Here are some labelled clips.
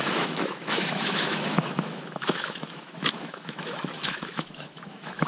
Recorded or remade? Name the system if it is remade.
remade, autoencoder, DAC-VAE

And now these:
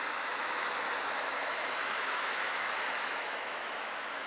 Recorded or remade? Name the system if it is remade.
remade, autoencoder, DAC-VAE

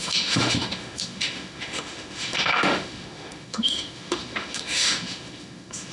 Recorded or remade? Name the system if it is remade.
remade, autoencoder, DAC-VAE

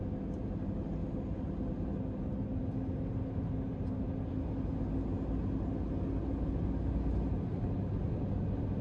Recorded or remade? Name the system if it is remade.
recorded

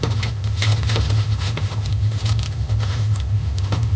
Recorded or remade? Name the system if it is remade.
remade, autoencoder, DAC-VAE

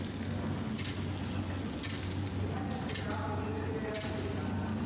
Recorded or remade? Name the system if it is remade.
recorded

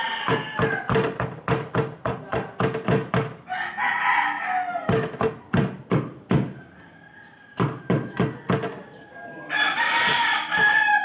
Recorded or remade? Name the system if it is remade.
recorded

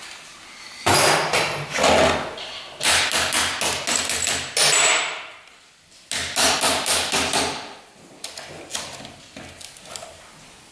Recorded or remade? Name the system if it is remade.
recorded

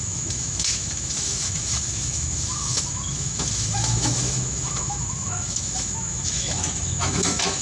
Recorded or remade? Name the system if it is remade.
remade, autoencoder, DAC-VAE